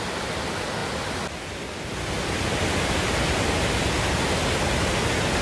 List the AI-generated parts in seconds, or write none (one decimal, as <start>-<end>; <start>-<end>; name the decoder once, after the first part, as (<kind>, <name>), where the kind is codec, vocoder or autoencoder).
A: none